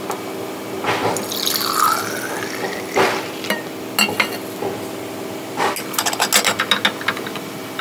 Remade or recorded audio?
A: recorded